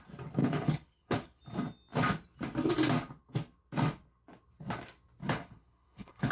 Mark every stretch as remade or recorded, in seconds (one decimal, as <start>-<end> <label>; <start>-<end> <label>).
0.0-0.4 recorded; 0.4-1.4 remade; 1.4-5.2 recorded; 5.2-6.3 remade